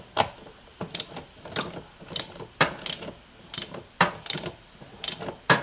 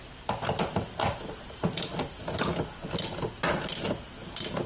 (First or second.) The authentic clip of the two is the second